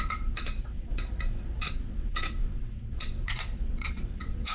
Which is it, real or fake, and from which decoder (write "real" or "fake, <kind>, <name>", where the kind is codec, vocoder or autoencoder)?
fake, vocoder, WaveNeXt